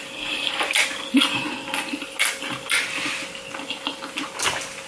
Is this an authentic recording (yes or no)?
yes